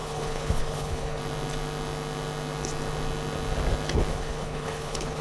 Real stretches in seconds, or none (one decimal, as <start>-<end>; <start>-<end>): 1.2-4.1